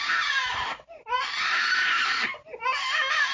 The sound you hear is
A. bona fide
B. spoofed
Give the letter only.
B